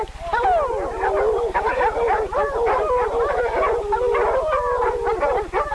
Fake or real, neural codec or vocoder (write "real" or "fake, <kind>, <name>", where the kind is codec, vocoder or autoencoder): real